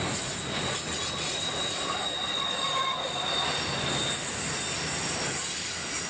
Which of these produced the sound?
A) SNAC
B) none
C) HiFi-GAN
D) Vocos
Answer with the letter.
B